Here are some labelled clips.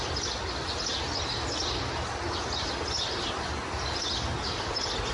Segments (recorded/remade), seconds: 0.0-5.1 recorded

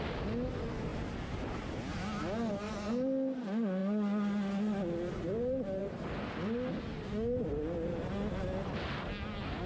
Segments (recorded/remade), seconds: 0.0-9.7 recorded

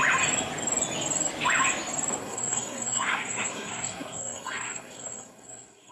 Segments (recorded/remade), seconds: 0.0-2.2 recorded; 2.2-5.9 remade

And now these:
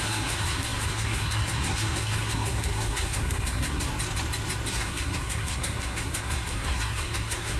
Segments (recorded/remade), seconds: 0.0-3.9 remade; 3.9-4.7 recorded; 4.7-7.6 remade

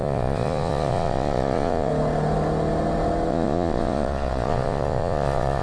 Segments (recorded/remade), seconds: 0.0-1.9 remade; 1.9-3.3 recorded; 3.3-5.6 remade

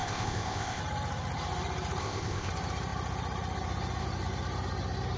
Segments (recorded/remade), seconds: 0.0-0.8 remade; 0.8-2.0 recorded; 2.0-2.5 remade; 2.5-5.2 recorded